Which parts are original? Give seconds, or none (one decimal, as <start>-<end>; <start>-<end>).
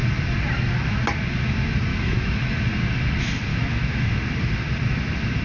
0.0-1.9; 2.6-3.5; 4.2-5.4